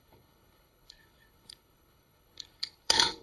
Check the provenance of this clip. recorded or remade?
remade